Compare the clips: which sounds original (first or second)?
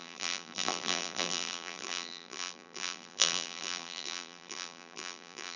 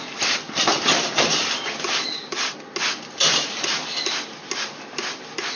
second